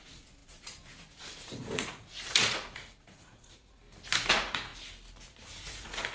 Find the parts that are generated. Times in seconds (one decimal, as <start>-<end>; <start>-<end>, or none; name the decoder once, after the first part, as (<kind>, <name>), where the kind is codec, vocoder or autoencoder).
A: 0.0-3.8 (vocoder, Vocos); 4.3-4.7; 5.3-6.1